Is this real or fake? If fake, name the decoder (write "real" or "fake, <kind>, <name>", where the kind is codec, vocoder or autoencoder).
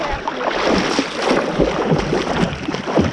real